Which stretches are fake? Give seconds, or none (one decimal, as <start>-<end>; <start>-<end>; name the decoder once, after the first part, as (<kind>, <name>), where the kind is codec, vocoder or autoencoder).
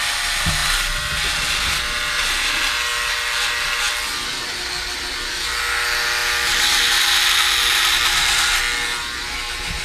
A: none